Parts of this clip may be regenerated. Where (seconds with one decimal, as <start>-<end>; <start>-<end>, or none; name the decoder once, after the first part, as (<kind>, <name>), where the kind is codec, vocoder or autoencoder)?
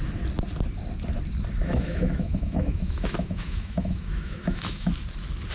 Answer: 1.6-4.9 (autoencoder, DAC-VAE)